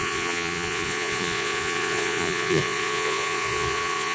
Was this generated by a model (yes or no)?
yes